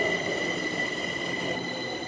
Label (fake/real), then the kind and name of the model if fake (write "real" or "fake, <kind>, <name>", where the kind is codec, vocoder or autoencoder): real